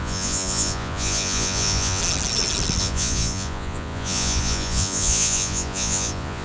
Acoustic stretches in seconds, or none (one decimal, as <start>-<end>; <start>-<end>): 2.0-2.8